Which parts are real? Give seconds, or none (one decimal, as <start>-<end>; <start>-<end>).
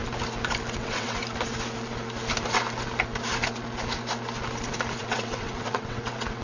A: 0.0-0.7; 1.2-5.0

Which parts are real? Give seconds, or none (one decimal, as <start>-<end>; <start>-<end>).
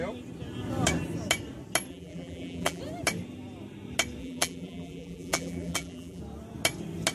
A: 0.0-1.9; 2.8-4.2; 6.2-7.1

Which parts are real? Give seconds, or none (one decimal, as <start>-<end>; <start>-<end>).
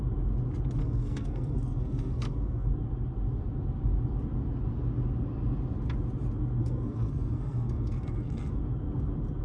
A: 0.0-0.8; 2.7-6.6; 8.6-9.4